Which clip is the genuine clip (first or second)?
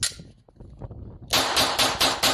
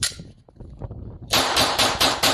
first